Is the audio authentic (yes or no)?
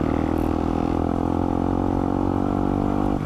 yes